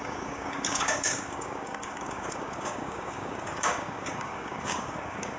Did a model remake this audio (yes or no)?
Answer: yes